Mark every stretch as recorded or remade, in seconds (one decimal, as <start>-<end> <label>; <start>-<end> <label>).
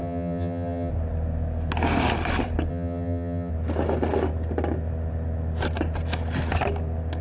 0.0-0.9 remade; 0.9-2.7 recorded; 2.7-3.5 remade; 3.5-7.2 recorded